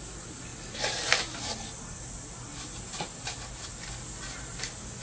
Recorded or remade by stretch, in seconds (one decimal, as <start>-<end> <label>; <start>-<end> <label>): 0.0-5.0 recorded